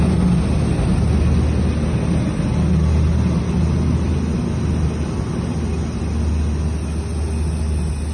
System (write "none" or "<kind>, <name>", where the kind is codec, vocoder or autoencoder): none